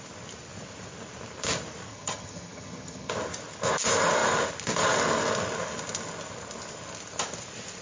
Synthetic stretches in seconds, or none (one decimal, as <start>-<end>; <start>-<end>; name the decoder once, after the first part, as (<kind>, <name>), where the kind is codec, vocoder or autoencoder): 1.9-3.1 (vocoder, HiFi-GAN)